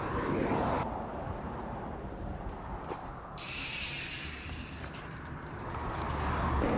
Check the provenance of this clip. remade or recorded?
remade